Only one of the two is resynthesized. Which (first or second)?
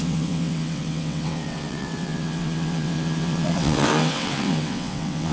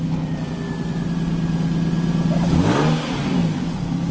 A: first